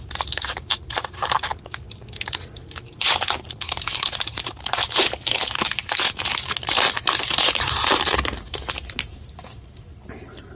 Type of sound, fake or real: fake